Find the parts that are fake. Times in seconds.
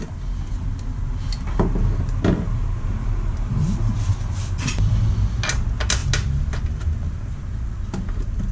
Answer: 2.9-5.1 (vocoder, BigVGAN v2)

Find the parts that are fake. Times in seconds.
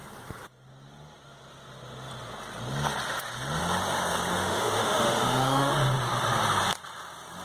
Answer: 4.3-5.7 (autoencoder, DAC-VAE)